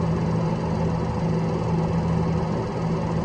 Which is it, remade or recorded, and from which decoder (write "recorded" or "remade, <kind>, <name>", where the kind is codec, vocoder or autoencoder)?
recorded